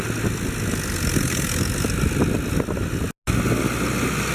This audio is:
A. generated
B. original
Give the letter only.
B